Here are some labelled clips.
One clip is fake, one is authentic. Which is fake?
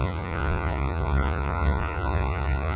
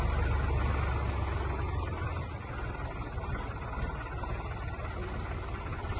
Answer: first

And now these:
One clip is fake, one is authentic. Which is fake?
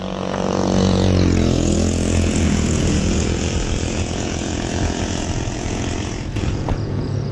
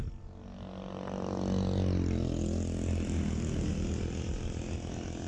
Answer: first